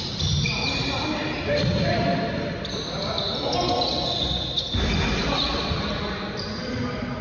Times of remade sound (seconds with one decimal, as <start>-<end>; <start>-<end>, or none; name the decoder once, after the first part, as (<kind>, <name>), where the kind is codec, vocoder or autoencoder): none